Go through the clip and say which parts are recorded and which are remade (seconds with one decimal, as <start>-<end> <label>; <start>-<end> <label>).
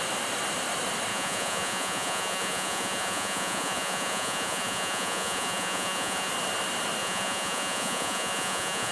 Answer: 0.0-1.1 recorded; 1.1-6.3 remade; 6.3-7.0 recorded; 7.0-8.9 remade